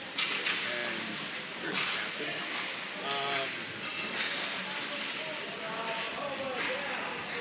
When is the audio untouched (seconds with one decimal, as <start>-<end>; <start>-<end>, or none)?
0.0-7.4